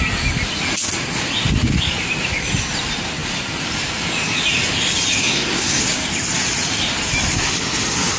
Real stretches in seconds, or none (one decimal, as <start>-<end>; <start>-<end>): 0.0-5.2; 5.8-8.2